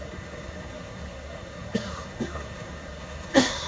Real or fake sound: fake